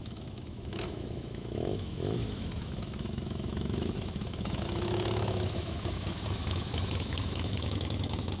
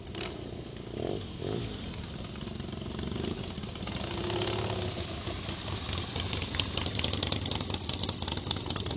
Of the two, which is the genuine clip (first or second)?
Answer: second